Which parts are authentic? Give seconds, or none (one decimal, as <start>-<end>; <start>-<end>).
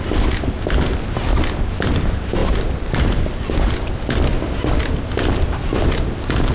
0.0-6.5